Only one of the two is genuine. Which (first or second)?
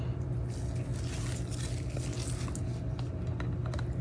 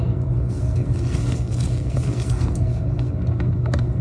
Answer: first